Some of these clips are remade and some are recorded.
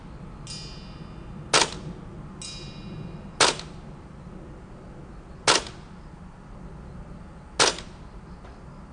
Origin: recorded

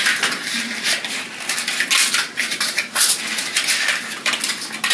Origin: recorded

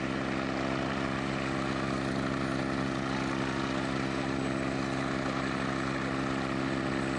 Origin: recorded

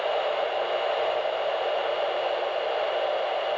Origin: remade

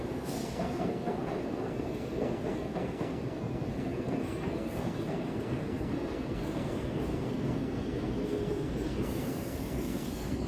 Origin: remade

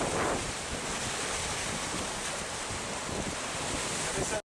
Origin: recorded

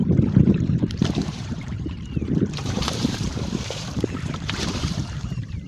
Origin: remade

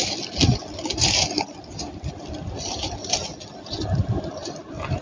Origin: recorded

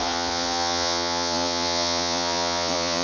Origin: remade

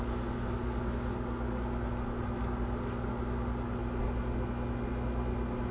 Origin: recorded